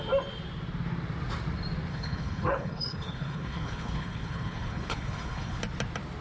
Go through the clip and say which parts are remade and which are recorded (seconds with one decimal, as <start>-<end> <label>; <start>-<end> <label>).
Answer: 0.0-1.9 recorded; 1.9-5.6 remade; 5.6-6.2 recorded